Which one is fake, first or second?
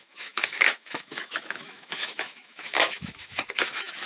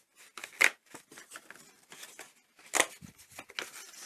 first